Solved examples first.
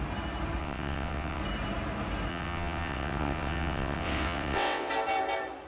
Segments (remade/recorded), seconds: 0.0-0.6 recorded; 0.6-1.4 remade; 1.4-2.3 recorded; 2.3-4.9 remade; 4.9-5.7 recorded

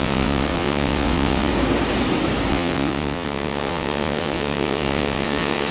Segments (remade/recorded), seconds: 0.0-1.5 remade; 1.5-2.5 recorded; 2.5-5.7 remade

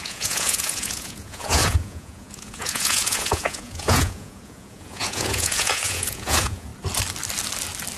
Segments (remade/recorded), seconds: 0.0-6.7 remade; 6.7-8.0 recorded

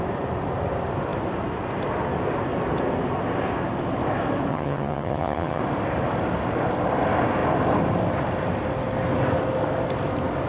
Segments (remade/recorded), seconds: 0.0-4.5 recorded; 4.5-5.6 remade; 5.6-10.5 recorded

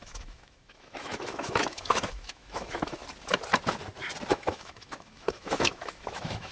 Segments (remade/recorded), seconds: 0.0-3.0 remade; 3.0-4.3 recorded; 4.3-6.5 remade

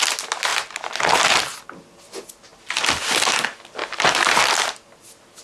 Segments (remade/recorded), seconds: 0.0-0.5 recorded; 0.5-1.4 remade; 1.4-3.8 recorded; 3.8-4.4 remade; 4.4-5.4 recorded

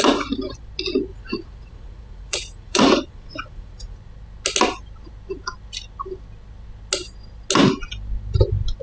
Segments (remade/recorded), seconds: 0.0-1.1 recorded; 1.1-4.0 remade; 4.0-8.8 recorded

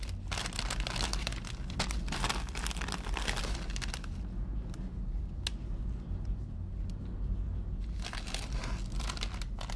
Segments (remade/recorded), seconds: 0.0-9.8 recorded